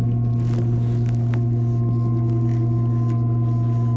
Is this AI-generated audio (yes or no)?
no